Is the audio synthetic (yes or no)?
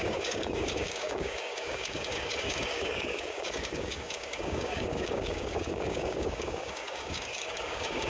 yes